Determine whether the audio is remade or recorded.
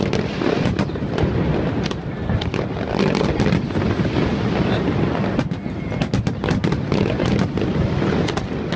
recorded